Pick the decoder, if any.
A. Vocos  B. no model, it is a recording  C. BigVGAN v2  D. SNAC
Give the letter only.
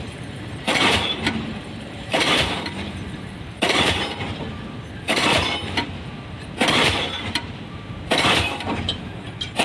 C